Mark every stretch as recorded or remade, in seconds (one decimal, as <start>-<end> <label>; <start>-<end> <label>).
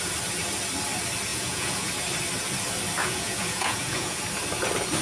0.0-1.3 recorded; 1.3-1.9 remade; 1.9-3.0 recorded; 3.0-4.2 remade; 4.2-5.0 recorded